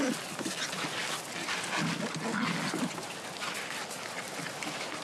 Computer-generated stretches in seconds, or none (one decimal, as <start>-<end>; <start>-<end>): none